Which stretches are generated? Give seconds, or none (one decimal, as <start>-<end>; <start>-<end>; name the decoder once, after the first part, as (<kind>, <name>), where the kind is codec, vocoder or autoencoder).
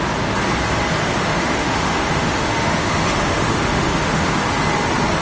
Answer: 1.2-4.3 (autoencoder, DAC-VAE)